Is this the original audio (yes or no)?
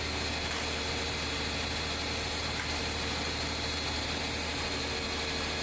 yes